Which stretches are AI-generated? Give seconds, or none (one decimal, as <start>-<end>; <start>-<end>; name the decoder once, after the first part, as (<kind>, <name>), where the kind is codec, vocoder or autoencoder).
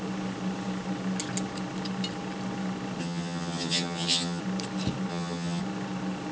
3.0-4.4 (vocoder, HiFi-GAN); 5.1-5.6